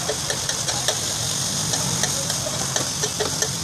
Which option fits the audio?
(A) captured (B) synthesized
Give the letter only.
A